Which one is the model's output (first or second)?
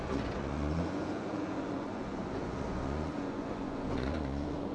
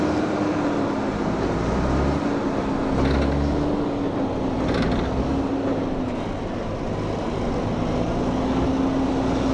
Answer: first